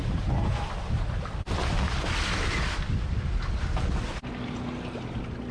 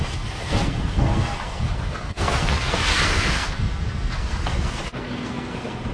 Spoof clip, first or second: second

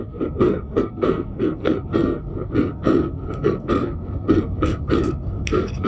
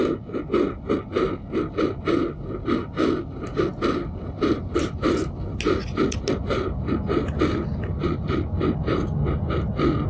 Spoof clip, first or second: first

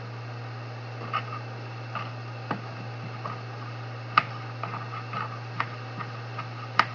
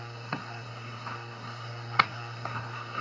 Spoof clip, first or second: second